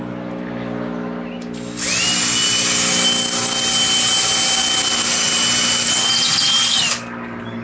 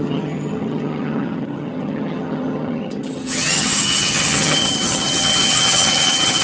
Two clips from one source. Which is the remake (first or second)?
second